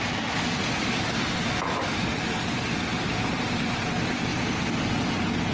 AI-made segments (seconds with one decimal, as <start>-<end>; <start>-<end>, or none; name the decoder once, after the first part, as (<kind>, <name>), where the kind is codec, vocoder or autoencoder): none